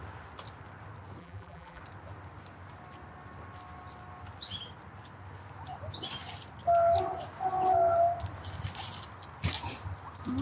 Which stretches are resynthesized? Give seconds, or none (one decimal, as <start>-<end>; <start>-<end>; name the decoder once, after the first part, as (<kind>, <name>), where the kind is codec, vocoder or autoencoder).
1.2-1.8 (vocoder, BigVGAN v2)